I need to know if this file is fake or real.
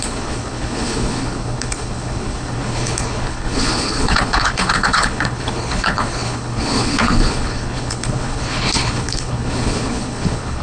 fake